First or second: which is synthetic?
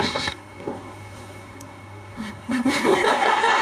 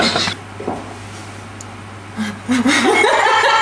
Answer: first